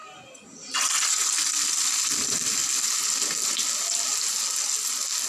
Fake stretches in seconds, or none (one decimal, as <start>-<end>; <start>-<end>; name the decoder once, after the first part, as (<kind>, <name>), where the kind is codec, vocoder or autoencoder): none